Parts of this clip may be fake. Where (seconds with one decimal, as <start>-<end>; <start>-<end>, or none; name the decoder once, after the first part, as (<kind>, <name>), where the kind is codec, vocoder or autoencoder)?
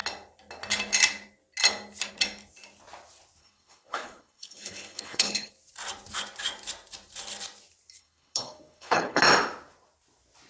3.4-5.5 (codec, HILCodec); 8.0-9.2